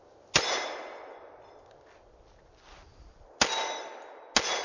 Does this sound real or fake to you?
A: real